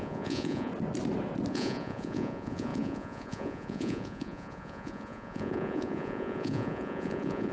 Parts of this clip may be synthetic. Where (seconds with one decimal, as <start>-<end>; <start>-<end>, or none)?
0.0-0.7; 1.5-7.5